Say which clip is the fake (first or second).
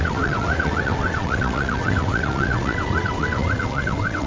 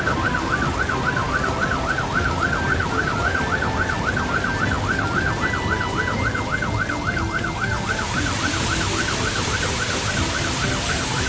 first